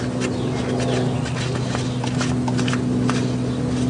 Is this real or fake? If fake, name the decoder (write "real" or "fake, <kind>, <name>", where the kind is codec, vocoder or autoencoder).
real